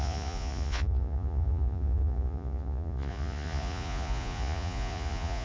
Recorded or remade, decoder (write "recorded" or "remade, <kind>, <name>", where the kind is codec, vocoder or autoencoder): remade, vocoder, Vocos